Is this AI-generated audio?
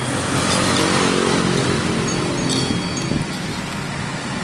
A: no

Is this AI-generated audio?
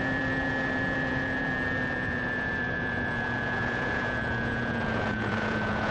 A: yes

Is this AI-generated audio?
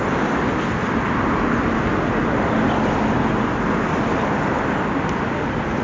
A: no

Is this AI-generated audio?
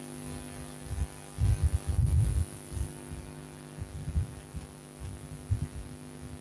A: no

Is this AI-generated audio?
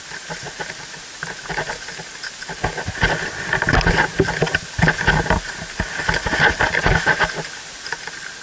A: no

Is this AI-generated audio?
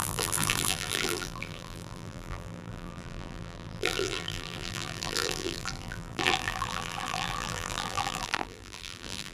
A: yes